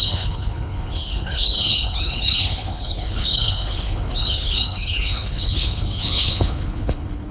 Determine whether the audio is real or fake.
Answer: fake